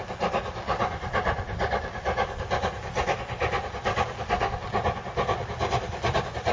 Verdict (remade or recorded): recorded